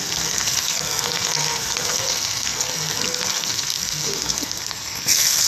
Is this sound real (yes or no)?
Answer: no